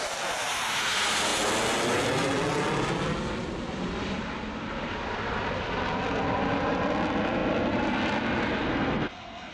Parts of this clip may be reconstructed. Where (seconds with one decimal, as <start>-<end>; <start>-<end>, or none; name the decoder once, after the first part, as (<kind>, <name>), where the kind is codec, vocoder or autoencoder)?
8.7-9.5 (codec, SNAC)

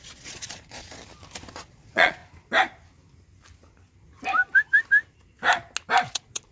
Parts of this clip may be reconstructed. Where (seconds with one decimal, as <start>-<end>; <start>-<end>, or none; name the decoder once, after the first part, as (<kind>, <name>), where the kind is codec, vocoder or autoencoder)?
0.0-1.0 (vocoder, Vocos); 1.7-2.2; 6.1-6.5

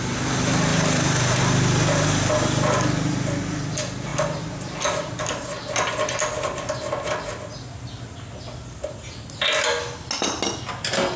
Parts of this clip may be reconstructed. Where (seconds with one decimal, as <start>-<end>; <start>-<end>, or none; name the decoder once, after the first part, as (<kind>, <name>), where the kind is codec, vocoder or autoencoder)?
0.7-1.4 (vocoder, BigVGAN v2); 4.1-5.2

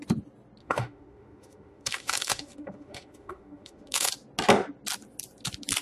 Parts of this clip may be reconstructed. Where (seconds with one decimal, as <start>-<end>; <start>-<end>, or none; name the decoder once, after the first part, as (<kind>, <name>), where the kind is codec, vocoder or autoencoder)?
0.6-4.1 (autoencoder, DAC-VAE)

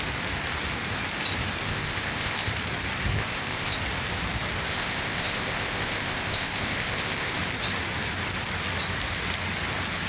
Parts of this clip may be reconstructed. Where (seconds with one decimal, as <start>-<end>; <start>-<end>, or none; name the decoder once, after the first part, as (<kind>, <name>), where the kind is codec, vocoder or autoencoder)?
1.6-2.5 (codec, ZipCodec); 3.1-3.8; 4.7-7.4

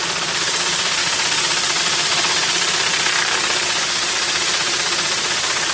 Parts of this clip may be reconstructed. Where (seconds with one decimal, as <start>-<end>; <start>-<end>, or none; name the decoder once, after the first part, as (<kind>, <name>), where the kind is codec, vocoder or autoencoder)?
0.0-1.0 (vocoder, BigVGAN v2); 1.8-2.9; 4.4-5.7